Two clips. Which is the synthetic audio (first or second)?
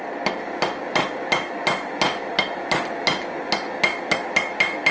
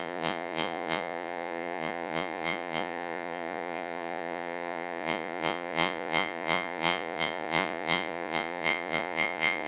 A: second